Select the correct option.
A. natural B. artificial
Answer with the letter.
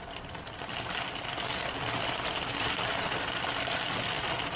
A